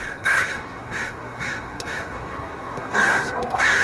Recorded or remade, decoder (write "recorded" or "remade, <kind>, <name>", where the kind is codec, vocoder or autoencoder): remade, codec, SNAC